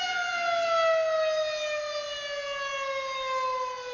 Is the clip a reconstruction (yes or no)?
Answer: no